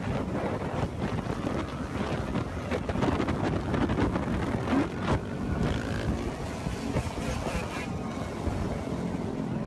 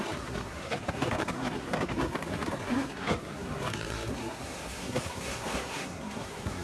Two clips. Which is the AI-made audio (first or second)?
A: second